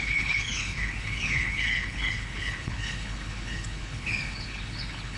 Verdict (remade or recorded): remade